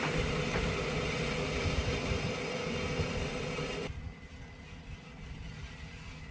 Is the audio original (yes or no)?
yes